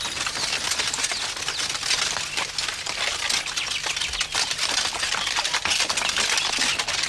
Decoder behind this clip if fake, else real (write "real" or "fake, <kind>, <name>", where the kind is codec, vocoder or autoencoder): real